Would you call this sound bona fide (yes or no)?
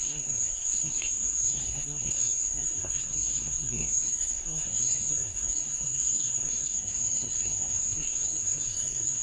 no